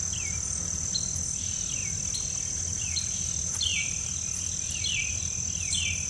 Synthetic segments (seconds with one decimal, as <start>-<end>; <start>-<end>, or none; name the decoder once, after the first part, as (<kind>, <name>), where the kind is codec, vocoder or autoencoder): 0.0-1.8 (vocoder, BigVGAN v2); 2.8-6.1